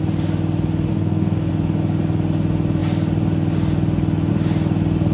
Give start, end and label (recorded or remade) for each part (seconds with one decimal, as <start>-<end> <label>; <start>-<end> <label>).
0.0-0.9 recorded; 0.9-1.5 remade; 1.5-5.1 recorded